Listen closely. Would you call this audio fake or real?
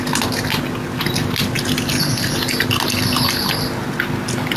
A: real